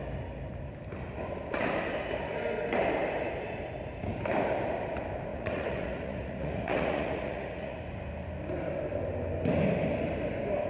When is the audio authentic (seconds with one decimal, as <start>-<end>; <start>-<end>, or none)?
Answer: 0.0-5.3; 7.8-10.7